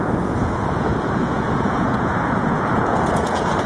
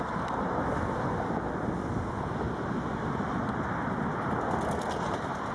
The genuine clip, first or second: second